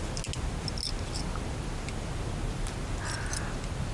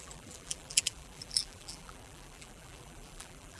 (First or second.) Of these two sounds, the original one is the first